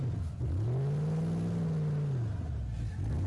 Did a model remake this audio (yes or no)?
no